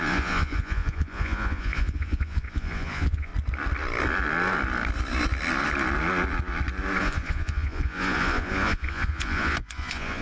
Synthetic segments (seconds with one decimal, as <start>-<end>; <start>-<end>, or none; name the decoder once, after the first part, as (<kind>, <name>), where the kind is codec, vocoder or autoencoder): 0.0-3.3 (vocoder, Vocos); 7.0-10.2